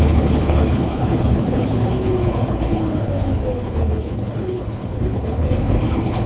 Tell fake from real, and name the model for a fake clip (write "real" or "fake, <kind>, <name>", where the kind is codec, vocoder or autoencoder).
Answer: fake, codec, HILCodec